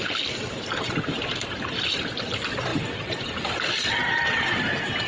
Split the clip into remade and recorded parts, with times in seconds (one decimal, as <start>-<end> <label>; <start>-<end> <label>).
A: 0.0-5.1 remade

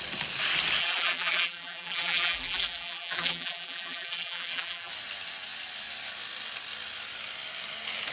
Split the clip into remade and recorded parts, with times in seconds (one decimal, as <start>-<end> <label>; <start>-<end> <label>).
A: 0.0-0.8 recorded; 0.8-4.9 remade; 4.9-8.1 recorded

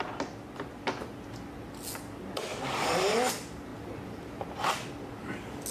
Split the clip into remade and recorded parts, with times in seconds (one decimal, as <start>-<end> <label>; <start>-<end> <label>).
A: 0.0-2.5 recorded; 2.5-3.1 remade; 3.1-5.7 recorded

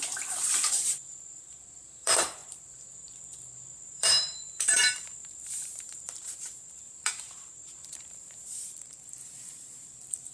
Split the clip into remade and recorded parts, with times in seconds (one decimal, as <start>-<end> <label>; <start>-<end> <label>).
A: 0.0-10.3 remade

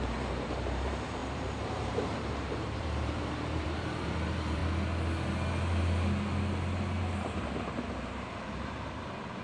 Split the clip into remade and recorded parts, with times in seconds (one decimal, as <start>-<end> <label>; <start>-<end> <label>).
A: 0.0-4.6 remade; 4.6-8.0 recorded; 8.0-9.4 remade

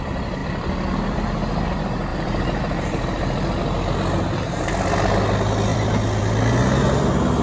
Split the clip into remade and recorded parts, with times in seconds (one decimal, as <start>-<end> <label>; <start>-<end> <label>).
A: 0.0-0.4 recorded; 0.4-1.3 remade; 1.3-2.1 recorded; 2.1-3.6 remade; 3.6-5.7 recorded; 5.7-6.2 remade; 6.2-7.4 recorded